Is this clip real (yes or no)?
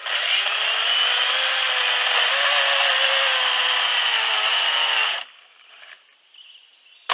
yes